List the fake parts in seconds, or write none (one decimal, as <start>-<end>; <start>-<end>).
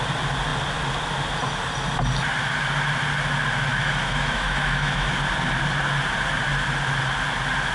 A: 3.7-5.1